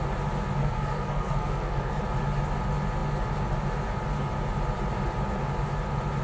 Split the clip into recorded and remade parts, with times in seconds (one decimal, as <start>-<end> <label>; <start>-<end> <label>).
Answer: 0.0-0.6 recorded; 0.6-2.0 remade; 2.0-6.2 recorded